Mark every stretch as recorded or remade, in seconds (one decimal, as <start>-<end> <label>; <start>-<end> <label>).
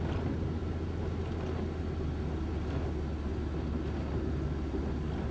0.0-5.3 recorded